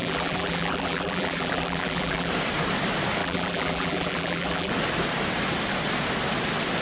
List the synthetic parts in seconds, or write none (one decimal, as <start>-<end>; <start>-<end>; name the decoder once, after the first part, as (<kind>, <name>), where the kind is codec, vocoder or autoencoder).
0.0-2.3 (vocoder, BigVGAN v2); 3.2-4.7